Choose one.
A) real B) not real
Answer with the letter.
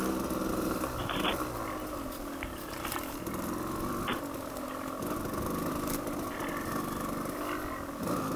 A